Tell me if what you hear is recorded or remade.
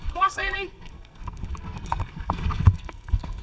remade